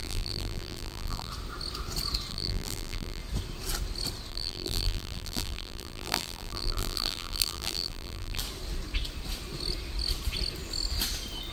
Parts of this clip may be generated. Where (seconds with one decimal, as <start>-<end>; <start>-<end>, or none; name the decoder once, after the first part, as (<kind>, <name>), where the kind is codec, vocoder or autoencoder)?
0.0-1.3 (vocoder, BigVGAN v2); 2.3-3.2; 4.3-8.4